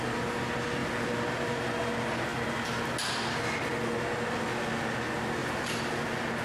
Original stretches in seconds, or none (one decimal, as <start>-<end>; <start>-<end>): 0.0-0.8; 1.6-5.4; 6.0-6.4